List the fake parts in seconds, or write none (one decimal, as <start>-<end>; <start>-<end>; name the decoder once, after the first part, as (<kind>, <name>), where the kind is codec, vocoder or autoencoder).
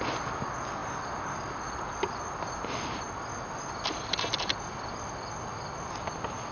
none